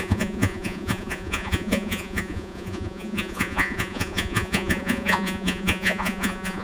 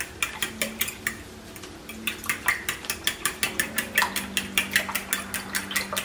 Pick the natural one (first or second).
second